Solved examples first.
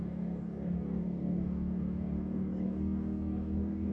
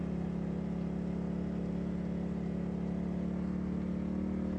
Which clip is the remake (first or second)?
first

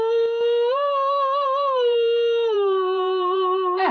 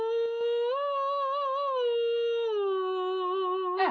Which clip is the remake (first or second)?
first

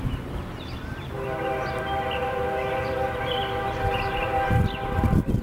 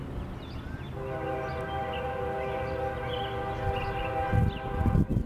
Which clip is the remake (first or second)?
first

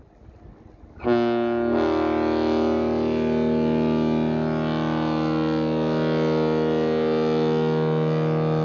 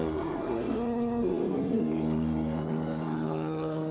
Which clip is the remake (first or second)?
second